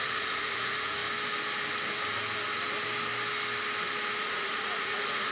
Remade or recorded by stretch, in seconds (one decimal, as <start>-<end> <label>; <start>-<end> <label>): 0.0-1.0 remade; 1.0-4.2 recorded; 4.2-5.3 remade